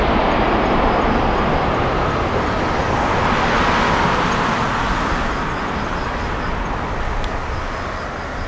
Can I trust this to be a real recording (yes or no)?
yes